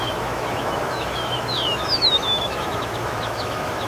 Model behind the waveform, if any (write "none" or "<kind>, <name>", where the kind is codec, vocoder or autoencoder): autoencoder, DAC-VAE